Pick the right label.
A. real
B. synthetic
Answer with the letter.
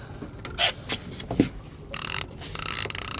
A